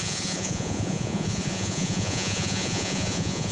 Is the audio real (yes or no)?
no